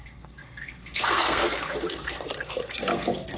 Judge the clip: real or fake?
fake